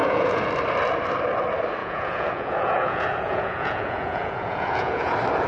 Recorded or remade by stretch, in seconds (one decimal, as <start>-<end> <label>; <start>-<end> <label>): 0.0-0.5 remade; 0.5-1.8 recorded; 1.8-5.1 remade; 5.1-5.5 recorded